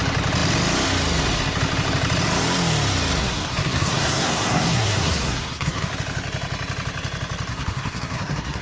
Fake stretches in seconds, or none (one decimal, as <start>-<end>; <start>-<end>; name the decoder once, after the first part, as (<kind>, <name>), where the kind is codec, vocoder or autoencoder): 3.2-5.9 (codec, SNAC); 7.5-8.6

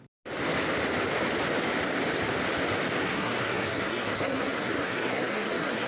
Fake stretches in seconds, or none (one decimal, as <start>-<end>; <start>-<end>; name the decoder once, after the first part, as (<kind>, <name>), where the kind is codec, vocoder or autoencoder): 3.0-5.9 (codec, SNAC)